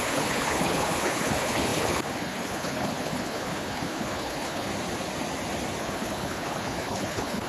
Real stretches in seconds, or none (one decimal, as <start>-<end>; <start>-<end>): 4.7-5.8